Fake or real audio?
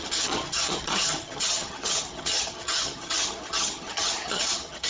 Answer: fake